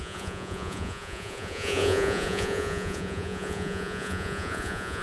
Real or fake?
fake